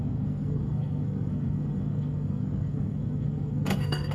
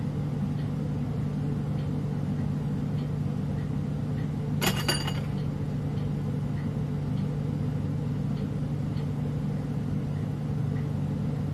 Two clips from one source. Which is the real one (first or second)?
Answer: second